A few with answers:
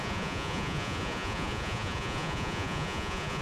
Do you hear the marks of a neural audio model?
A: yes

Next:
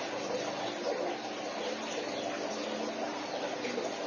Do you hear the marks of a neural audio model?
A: no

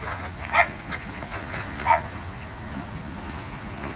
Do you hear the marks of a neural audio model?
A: yes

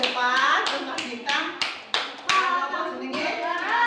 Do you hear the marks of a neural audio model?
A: yes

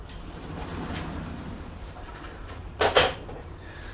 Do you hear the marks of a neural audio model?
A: yes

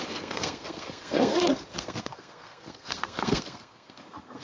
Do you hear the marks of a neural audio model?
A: yes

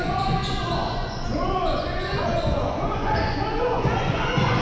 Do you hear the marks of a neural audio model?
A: yes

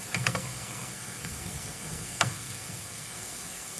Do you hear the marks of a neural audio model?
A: yes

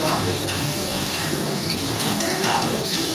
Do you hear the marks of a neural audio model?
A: yes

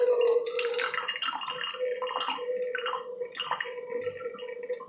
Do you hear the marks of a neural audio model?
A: no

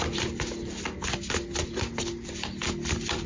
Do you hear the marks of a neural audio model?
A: no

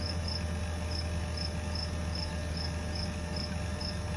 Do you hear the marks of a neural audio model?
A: no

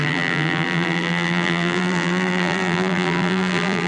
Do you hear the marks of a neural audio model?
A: yes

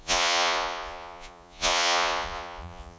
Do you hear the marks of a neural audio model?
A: yes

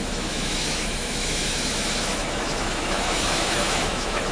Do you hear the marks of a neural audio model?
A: yes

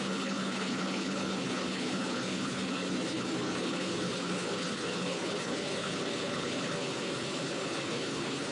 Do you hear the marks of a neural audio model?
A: yes